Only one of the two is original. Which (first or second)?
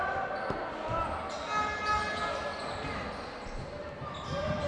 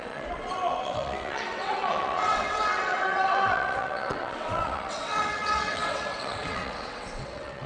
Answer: first